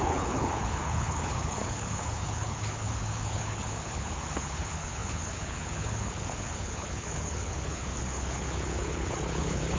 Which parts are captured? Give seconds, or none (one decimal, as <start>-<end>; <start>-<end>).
none